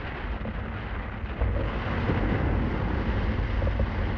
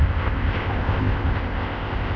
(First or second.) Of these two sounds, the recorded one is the first